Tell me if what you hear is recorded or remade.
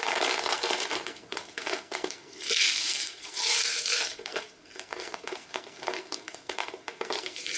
remade